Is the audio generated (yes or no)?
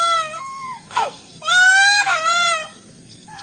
yes